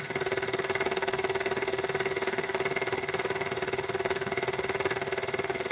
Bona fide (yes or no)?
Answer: no